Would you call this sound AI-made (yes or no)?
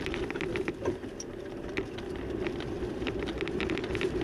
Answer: yes